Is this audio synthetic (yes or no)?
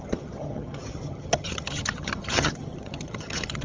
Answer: yes